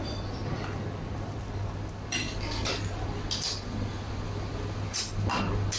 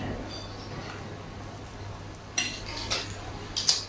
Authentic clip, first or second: second